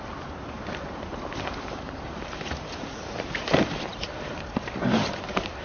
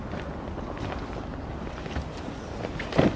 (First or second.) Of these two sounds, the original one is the second